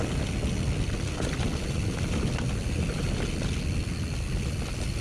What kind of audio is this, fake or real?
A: real